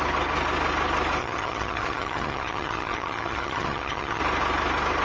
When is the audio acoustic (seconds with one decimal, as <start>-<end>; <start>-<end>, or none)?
0.0-1.2; 4.2-5.0